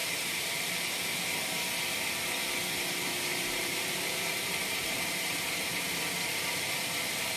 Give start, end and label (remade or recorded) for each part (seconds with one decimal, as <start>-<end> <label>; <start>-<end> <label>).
0.0-0.5 remade; 0.5-3.3 recorded; 3.3-6.0 remade; 6.0-7.4 recorded